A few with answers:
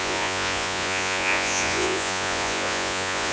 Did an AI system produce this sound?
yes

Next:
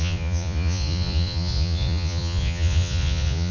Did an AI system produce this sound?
yes